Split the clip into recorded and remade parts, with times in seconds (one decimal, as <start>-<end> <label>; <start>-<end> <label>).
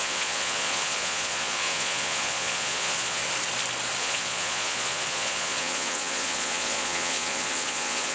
0.0-3.2 remade; 3.2-4.0 recorded; 4.0-8.1 remade